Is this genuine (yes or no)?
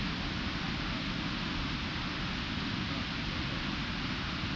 yes